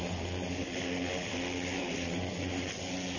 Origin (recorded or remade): recorded